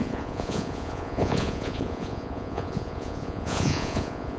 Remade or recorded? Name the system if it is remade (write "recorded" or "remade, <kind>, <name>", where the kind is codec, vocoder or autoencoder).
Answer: remade, vocoder, Vocos